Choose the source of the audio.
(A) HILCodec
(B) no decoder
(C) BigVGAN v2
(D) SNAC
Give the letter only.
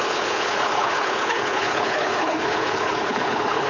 A